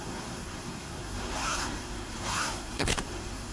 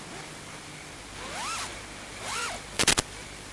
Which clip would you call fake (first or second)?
first